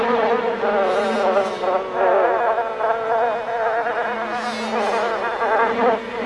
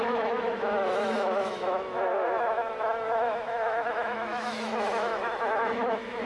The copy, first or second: second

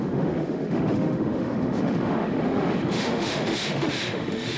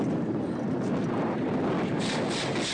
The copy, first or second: first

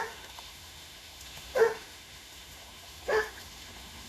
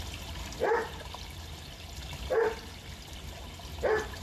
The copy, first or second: first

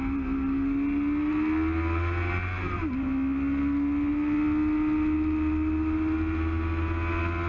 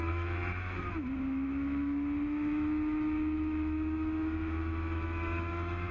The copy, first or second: second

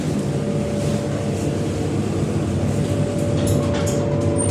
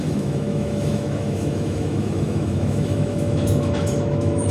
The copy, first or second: second